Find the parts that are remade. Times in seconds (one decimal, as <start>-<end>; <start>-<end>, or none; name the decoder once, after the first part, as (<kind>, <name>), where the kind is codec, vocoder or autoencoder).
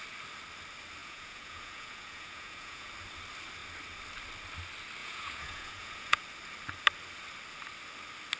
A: 1.0-2.9 (vocoder, Vocos); 5.0-6.2